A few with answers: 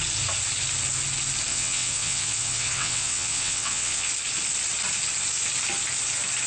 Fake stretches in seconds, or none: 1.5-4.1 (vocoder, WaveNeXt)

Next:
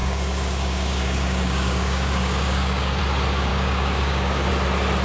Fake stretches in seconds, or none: 0.0-3.0 (codec, DAC); 3.5-4.5

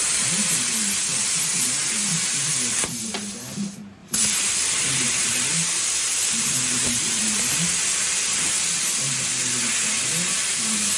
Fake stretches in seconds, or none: 0.0-3.2 (vocoder, BigVGAN v2); 4.0-9.3

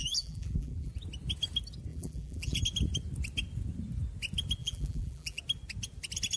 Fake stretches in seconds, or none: 0.0-0.9 (vocoder, BigVGAN v2); 1.9-2.6; 4.6-5.4

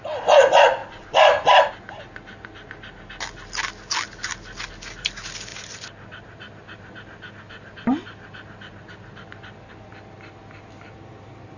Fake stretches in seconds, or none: none

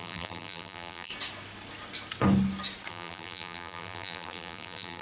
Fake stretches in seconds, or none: 0.0-1.1 (vocoder, BigVGAN v2); 2.9-5.0